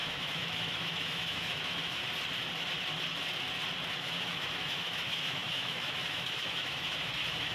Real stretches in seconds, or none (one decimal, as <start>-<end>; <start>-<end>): 2.0-3.9